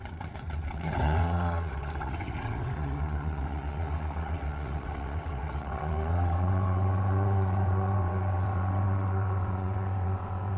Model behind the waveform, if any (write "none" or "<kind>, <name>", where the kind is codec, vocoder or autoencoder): vocoder, WaveNeXt